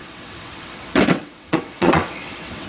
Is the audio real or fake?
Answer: fake